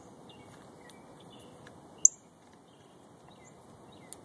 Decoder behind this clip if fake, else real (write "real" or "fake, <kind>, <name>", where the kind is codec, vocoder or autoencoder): real